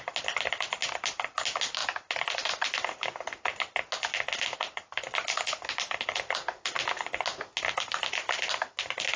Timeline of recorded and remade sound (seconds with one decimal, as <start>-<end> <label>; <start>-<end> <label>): 0.0-9.2 recorded